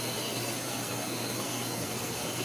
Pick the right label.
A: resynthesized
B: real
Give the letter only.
A